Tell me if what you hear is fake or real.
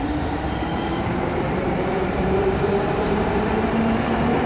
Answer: fake